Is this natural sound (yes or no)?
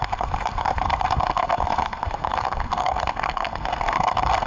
no